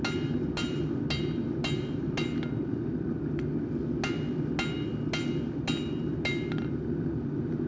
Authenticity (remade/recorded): recorded